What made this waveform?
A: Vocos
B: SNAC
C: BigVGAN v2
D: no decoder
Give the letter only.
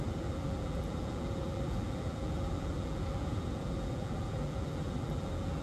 C